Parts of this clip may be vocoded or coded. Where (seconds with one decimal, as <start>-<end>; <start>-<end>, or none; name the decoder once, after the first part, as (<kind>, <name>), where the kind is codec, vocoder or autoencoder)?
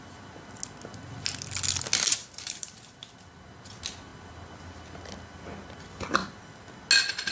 2.2-3.1 (vocoder, BigVGAN v2)